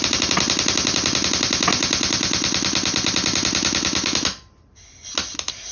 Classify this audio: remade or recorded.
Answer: recorded